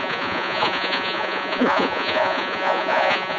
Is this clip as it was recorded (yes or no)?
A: no